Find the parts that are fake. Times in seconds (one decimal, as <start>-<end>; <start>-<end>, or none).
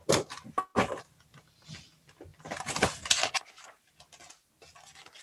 none